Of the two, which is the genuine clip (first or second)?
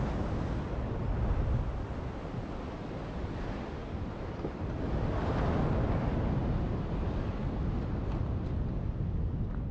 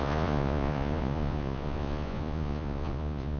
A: first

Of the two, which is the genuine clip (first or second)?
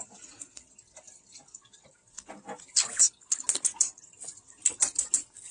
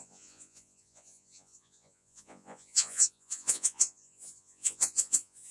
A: first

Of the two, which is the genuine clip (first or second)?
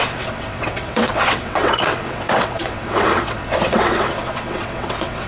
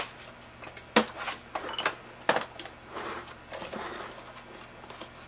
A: second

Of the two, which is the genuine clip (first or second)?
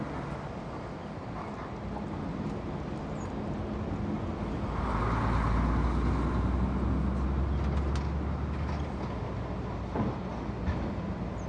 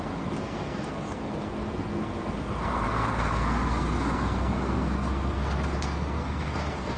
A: first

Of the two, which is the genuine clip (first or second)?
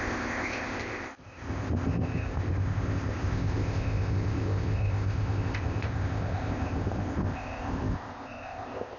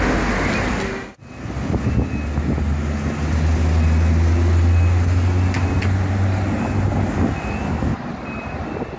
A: second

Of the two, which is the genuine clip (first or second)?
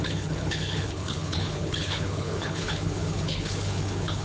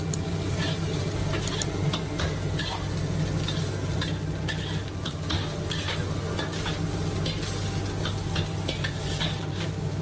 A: second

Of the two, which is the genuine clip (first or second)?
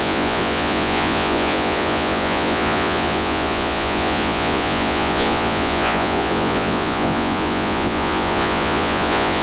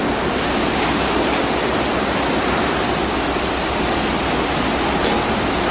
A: second